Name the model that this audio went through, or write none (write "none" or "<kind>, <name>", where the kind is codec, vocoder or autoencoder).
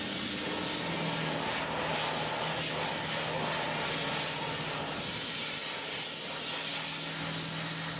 none